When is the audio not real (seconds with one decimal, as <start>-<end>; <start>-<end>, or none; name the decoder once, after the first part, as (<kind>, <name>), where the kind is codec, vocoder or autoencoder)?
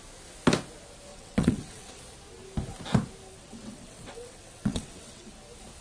1.1-2.0 (vocoder, WaveNeXt); 3.3-5.3